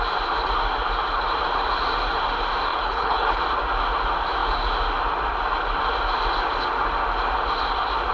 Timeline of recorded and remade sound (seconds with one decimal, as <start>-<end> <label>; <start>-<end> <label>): 0.0-2.7 recorded; 2.7-3.4 remade; 3.4-8.1 recorded